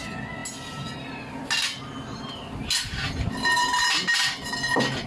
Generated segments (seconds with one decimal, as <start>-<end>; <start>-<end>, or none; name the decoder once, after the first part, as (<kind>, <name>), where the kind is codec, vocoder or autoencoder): none